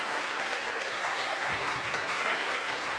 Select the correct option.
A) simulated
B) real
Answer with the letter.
A